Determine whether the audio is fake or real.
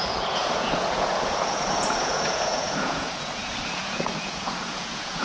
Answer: fake